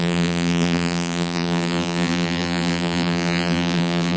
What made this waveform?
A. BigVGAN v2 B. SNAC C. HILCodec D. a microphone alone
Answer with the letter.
A